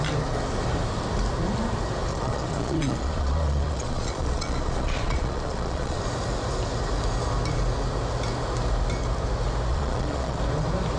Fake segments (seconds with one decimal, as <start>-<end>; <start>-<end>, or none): 2.1-6.0; 9.7-10.4